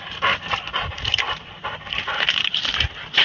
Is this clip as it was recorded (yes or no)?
no